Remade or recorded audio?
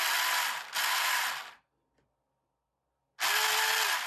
recorded